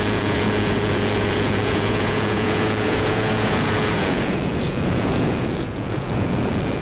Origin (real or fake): fake